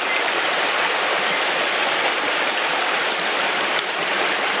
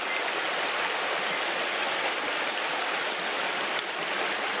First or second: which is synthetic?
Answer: first